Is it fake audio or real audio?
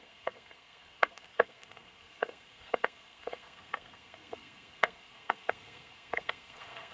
fake